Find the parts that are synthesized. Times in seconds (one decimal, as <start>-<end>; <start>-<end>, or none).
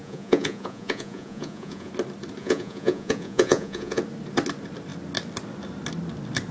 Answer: 0.0-1.9; 2.4-4.0